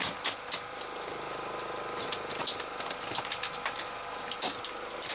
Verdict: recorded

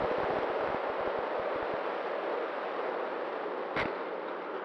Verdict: recorded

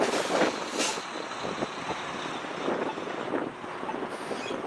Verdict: recorded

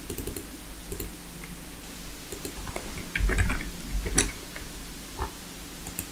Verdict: recorded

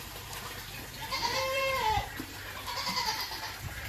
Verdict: remade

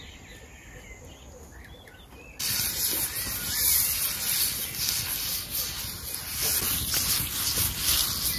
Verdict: recorded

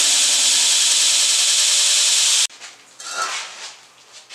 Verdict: recorded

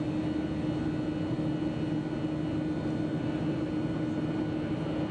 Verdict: recorded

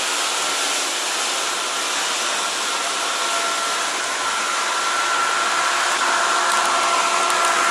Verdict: recorded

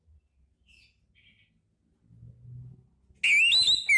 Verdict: recorded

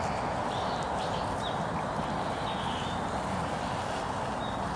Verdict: recorded